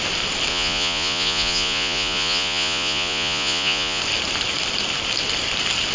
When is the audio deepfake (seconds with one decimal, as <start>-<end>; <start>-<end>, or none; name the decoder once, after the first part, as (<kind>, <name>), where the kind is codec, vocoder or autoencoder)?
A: 0.5-4.0 (vocoder, Vocos)